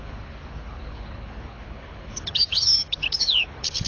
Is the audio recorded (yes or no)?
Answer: no